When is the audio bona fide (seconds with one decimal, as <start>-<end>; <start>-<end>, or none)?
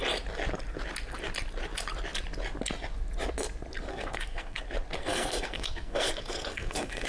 0.0-3.9; 4.6-5.0